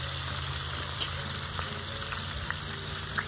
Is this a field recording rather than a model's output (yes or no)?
yes